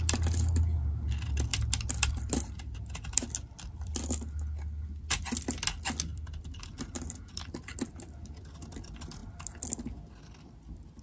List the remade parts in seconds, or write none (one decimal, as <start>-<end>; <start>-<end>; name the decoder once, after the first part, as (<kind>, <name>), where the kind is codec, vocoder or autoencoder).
1.5-4.0 (vocoder, BigVGAN v2); 6.1-6.6